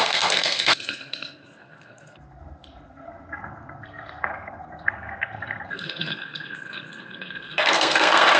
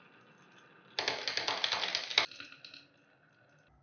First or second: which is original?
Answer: second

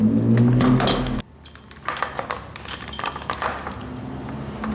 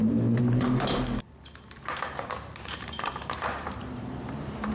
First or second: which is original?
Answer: first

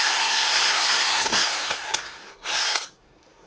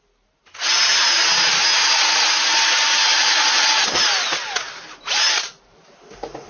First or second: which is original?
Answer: second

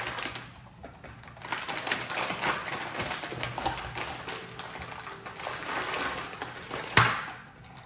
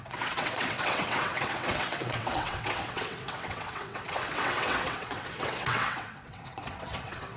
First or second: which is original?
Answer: first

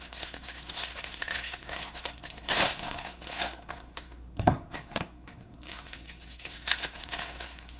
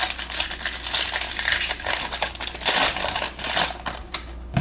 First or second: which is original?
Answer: second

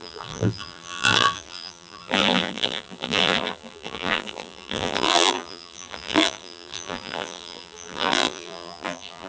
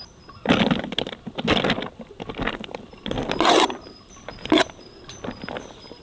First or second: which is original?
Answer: second